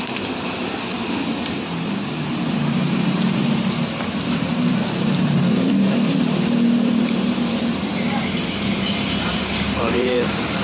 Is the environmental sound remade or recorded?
remade